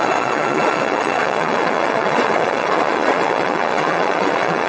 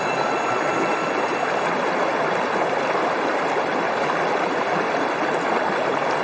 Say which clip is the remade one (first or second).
first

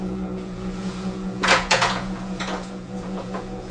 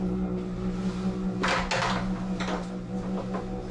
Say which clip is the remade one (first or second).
first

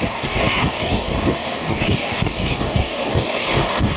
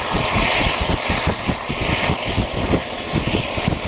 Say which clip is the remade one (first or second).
first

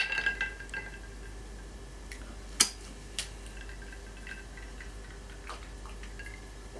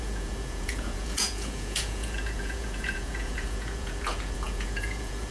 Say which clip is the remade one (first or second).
second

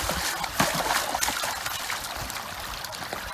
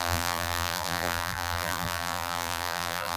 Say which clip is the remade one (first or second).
second